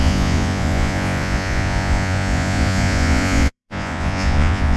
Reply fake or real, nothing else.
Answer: fake